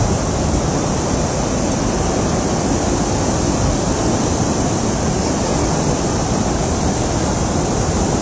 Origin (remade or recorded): remade